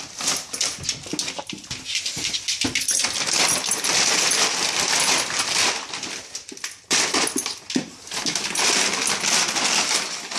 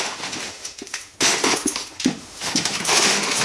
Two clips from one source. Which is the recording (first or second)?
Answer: first